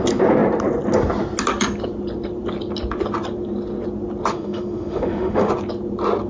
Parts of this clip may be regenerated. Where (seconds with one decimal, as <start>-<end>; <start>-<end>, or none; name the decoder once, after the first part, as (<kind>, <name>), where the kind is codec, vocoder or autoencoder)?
4.3-5.5 (autoencoder, DAC-VAE)